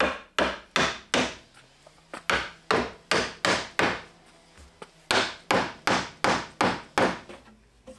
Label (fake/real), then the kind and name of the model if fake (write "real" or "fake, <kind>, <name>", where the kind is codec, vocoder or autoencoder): real